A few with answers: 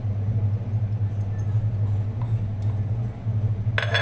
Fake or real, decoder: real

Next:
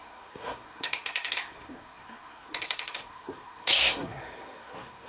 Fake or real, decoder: fake, codec, SNAC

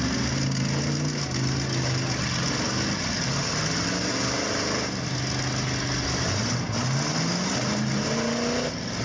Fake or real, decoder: real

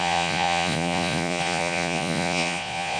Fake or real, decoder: fake, vocoder, Vocos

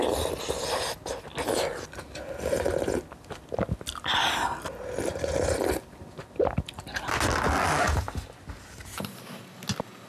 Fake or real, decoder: real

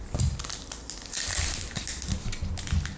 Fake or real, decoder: real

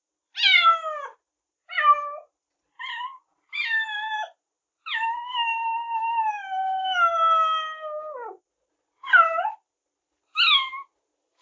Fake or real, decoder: real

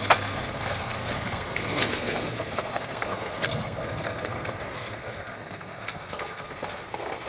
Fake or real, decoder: fake, codec, SNAC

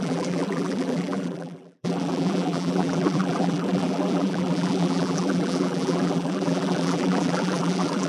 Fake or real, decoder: fake, vocoder, BigVGAN v2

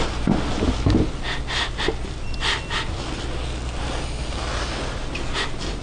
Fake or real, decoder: real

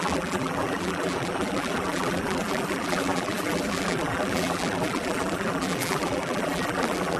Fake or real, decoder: fake, vocoder, BigVGAN v2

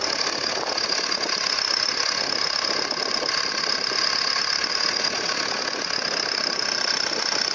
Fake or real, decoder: real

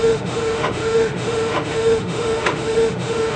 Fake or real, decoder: fake, autoencoder, DAC-VAE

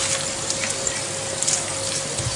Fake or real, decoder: real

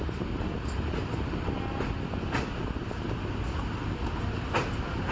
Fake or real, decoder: real